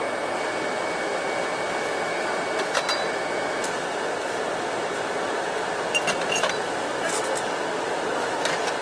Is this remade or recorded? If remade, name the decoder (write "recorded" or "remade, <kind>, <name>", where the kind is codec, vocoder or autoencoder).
recorded